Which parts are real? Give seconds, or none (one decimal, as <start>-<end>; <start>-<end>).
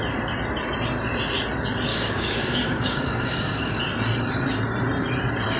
0.0-1.9; 3.8-5.6